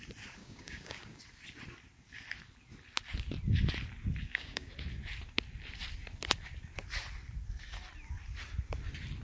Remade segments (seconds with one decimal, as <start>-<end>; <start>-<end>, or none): 0.4-1.2; 4.2-4.7